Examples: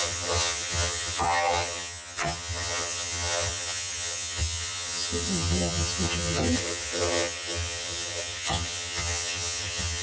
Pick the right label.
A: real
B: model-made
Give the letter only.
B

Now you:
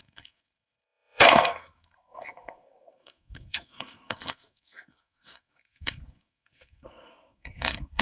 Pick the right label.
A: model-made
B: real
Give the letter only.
A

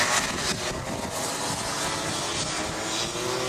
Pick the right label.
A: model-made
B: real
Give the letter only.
B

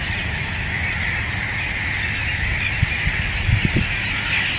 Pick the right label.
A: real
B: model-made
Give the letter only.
A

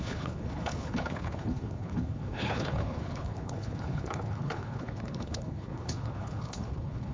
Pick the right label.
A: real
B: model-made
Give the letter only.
B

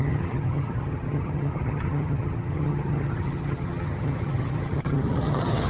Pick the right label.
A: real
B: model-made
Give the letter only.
B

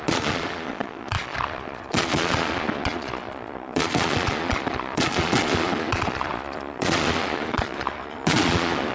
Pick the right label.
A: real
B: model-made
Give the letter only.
B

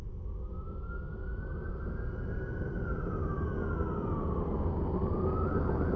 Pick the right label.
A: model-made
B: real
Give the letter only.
B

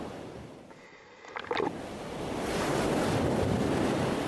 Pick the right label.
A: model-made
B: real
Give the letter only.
B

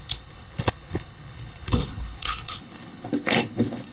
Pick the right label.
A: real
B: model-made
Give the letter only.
B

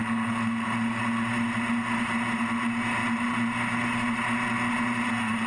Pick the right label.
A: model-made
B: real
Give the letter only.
B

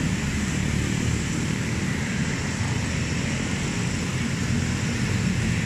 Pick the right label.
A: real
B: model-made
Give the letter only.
A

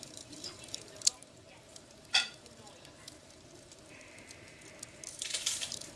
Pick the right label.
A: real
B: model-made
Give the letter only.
B